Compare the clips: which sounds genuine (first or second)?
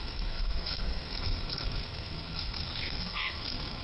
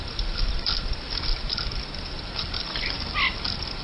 second